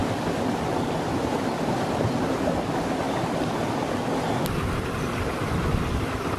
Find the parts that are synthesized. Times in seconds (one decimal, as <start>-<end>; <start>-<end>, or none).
0.0-1.2